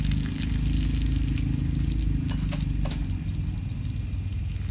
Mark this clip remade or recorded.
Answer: recorded